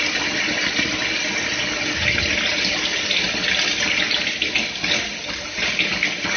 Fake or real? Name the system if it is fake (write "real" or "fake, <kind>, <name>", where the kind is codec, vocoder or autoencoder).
real